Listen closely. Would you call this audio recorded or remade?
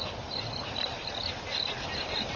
recorded